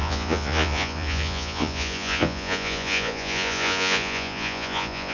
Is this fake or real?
fake